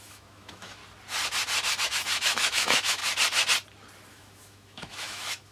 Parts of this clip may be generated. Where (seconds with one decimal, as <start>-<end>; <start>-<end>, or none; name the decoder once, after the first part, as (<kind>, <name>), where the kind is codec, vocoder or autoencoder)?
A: 0.0-0.8 (autoencoder, DAC-VAE); 1.8-3.0; 4.1-5.5

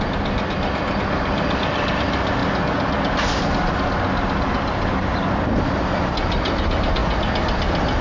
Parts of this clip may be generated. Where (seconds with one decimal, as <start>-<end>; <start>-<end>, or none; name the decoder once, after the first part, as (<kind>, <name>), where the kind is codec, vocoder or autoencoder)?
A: none

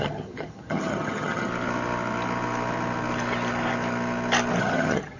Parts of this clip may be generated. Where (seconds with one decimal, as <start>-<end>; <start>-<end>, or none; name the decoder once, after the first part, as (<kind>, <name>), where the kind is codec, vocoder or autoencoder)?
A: 0.0-1.5 (vocoder, HiFi-GAN); 4.6-5.2

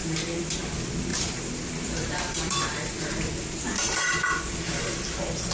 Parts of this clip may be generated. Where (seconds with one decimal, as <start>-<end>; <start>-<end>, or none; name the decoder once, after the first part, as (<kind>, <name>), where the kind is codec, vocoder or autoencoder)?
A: 1.1-4.4 (vocoder, BigVGAN v2)

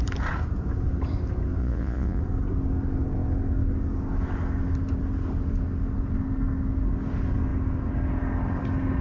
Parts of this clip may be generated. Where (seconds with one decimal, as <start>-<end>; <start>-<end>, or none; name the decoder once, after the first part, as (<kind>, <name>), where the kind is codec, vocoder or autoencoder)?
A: 1.6-2.2 (vocoder, Vocos)

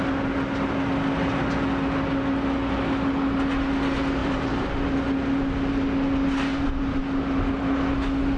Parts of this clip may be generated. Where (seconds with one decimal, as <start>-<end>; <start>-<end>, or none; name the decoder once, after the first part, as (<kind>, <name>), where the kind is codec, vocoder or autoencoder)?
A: 4.2-4.9 (vocoder, BigVGAN v2); 6.5-7.0